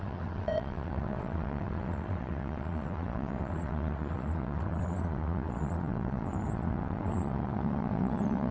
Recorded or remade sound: remade